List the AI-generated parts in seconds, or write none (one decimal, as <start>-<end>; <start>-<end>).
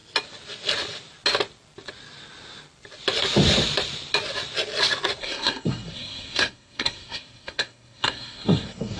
5.2-9.0